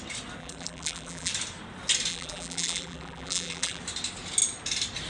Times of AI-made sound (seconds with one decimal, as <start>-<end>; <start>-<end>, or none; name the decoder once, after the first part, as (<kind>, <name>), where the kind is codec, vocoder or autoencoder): 0.4-1.3 (vocoder, BigVGAN v2); 2.1-3.8

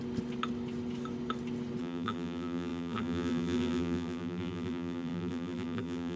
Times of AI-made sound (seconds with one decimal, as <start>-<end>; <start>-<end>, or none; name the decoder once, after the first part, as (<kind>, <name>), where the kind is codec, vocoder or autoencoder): 1.8-6.2 (vocoder, BigVGAN v2)

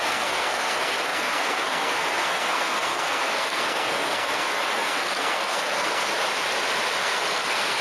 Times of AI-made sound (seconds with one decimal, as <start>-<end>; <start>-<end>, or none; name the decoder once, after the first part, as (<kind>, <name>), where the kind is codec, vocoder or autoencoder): 0.0-6.1 (codec, SNAC); 7.0-7.8

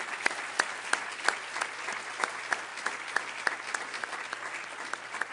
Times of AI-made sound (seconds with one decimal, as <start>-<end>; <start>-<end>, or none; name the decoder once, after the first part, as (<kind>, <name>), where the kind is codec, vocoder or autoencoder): none